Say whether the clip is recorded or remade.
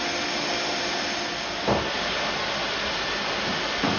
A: recorded